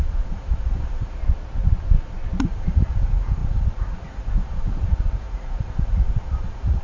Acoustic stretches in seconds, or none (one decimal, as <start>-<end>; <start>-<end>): 1.2-2.4